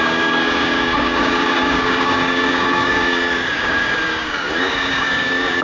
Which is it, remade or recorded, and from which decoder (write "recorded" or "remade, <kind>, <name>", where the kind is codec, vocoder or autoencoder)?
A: remade, codec, DAC